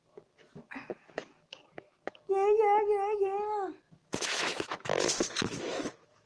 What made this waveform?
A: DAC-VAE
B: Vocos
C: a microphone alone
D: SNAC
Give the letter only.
A